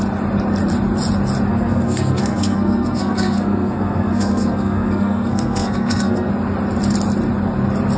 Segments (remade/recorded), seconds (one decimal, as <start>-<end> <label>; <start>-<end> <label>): 0.0-1.5 recorded; 1.5-6.3 remade; 6.3-8.0 recorded